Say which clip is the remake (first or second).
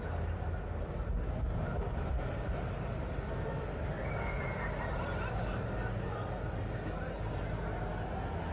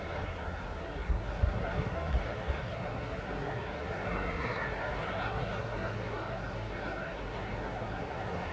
second